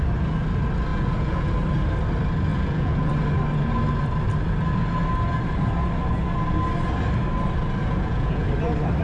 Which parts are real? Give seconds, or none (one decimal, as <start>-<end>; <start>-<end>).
0.0-0.9; 1.5-2.5; 3.1-7.8; 8.5-9.0